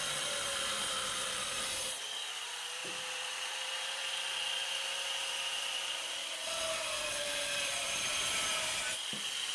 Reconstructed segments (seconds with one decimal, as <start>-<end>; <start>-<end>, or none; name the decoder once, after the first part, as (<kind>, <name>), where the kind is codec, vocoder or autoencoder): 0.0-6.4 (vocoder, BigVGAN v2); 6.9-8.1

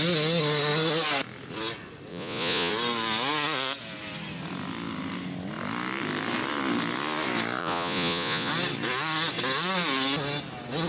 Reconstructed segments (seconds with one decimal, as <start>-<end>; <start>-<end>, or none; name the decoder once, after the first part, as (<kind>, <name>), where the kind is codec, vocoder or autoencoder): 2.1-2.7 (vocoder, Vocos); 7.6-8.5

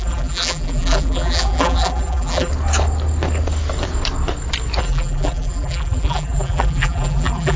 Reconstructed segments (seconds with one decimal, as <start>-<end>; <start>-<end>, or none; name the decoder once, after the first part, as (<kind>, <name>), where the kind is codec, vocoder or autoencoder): 0.0-2.5 (vocoder, BigVGAN v2); 4.8-7.6

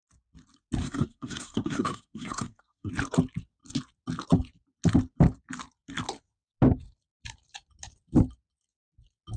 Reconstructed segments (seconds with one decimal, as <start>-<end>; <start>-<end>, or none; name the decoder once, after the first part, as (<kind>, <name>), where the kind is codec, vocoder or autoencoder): 0.8-2.9 (codec, SNAC)

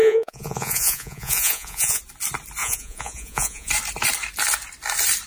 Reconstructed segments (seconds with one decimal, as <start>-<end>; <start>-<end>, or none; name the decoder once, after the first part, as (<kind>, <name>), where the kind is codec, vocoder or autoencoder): 0.0-2.0 (vocoder, Vocos); 2.6-3.7

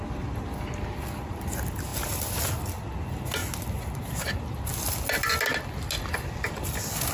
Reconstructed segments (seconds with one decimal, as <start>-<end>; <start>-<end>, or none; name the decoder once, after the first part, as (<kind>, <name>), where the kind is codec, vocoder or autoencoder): none